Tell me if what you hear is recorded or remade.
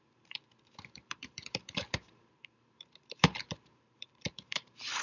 remade